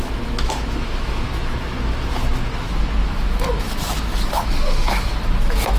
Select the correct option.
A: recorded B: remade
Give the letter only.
B